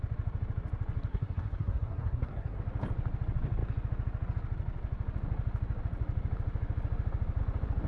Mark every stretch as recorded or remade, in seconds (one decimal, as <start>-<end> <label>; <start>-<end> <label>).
0.0-1.1 recorded; 1.1-2.6 remade; 2.6-7.9 recorded